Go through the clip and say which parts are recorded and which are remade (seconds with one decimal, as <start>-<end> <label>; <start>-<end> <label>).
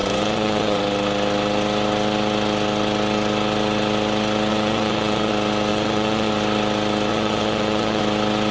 0.0-0.8 remade; 0.8-4.5 recorded; 4.5-5.3 remade; 5.3-5.7 recorded; 5.7-6.3 remade; 6.3-7.1 recorded; 7.1-8.0 remade; 8.0-8.5 recorded